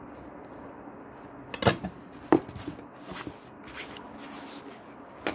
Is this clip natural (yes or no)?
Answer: yes